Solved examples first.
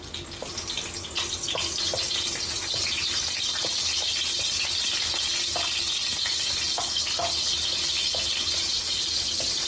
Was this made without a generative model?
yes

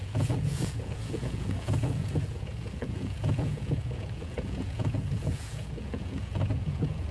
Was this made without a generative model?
no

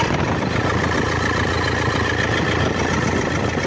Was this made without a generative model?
yes